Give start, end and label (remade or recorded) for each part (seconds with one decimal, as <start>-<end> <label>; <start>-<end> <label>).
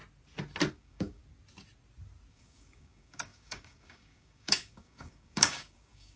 0.0-0.7 recorded; 0.7-1.2 remade; 1.2-2.3 recorded; 2.3-6.2 remade